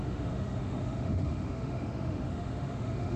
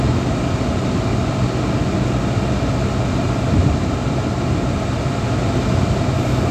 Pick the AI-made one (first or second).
first